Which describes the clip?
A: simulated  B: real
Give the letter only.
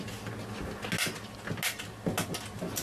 B